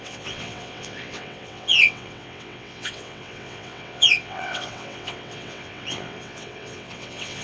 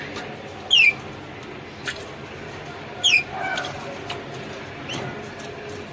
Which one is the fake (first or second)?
first